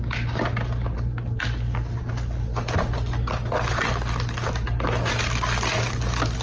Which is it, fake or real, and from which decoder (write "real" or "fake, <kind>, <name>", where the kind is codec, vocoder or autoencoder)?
real